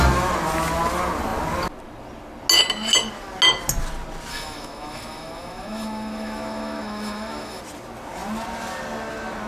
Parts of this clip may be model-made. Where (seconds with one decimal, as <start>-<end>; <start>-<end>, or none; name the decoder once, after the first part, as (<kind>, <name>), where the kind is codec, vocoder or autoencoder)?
4.3-7.6 (autoencoder, DAC-VAE)